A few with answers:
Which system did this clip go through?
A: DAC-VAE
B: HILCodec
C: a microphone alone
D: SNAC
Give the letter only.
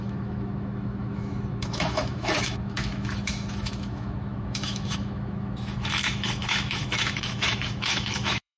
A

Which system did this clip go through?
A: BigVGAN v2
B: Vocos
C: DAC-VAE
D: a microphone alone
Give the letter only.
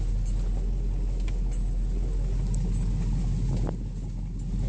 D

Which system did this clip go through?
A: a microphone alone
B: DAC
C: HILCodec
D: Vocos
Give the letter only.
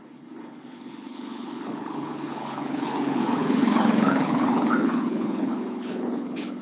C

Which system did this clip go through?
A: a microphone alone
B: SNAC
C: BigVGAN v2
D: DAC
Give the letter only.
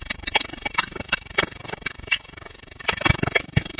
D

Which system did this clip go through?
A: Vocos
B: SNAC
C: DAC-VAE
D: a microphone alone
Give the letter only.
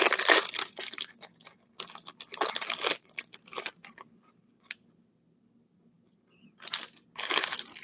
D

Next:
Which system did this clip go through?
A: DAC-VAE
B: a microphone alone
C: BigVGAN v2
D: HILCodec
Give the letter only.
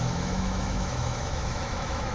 A